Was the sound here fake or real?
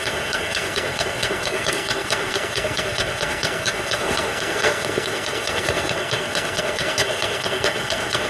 fake